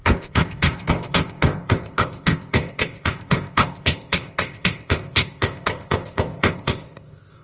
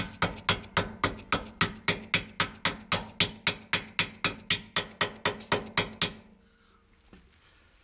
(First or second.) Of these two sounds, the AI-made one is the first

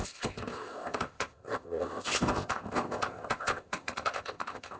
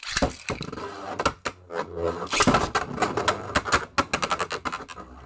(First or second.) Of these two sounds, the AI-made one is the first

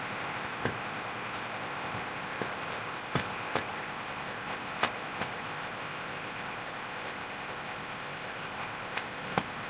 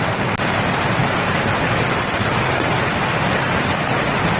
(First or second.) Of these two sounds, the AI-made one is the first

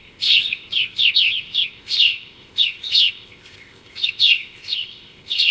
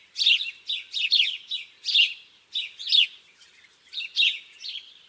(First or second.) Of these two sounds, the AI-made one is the first